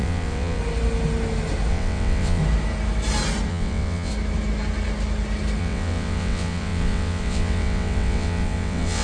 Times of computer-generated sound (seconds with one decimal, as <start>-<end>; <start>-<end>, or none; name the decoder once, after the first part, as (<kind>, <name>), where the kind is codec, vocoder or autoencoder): 0.0-0.6 (vocoder, WaveNeXt); 1.7-2.4; 3.5-4.1; 5.6-9.0